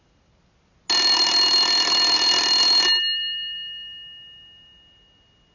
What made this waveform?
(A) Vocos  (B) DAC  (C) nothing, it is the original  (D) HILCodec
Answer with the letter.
C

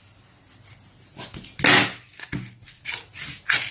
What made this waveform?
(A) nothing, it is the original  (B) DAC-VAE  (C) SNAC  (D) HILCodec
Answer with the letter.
A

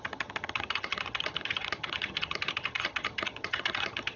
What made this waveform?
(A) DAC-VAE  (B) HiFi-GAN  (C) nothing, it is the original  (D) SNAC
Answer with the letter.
B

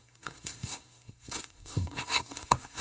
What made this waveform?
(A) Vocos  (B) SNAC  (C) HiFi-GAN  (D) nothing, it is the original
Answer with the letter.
B